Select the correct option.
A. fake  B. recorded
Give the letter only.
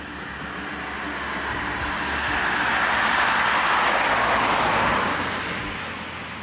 B